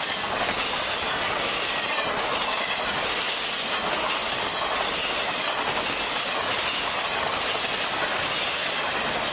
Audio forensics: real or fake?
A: real